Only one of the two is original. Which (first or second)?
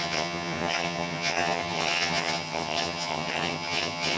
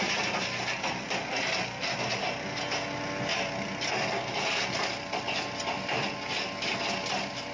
second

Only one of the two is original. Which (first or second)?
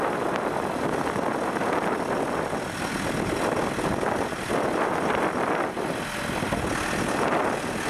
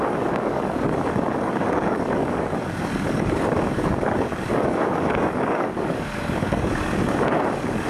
first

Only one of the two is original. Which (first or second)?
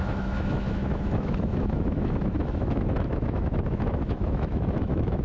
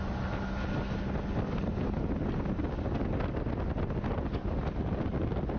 second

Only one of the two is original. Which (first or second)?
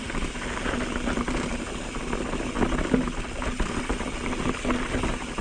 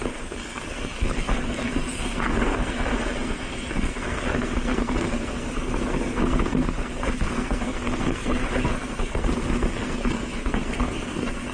first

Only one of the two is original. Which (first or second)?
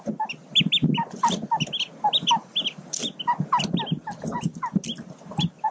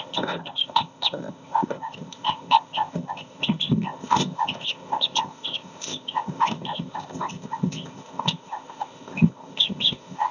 first